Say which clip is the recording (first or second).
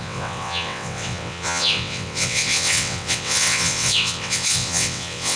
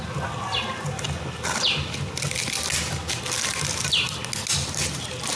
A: second